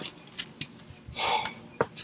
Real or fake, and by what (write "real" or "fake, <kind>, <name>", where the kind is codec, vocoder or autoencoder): real